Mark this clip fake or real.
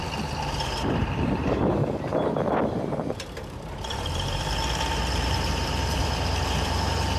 fake